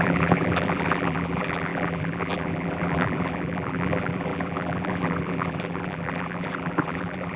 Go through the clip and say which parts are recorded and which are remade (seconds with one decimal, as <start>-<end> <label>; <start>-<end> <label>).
0.0-7.4 remade